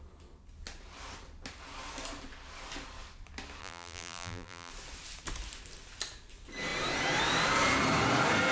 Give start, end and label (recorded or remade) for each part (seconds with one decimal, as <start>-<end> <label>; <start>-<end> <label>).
0.0-3.6 recorded; 3.6-4.7 remade; 4.7-8.5 recorded